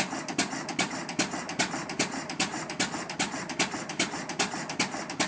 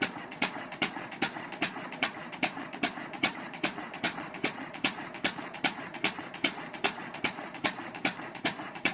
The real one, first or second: first